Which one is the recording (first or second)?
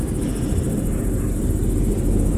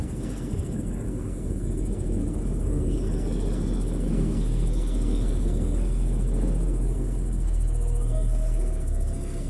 first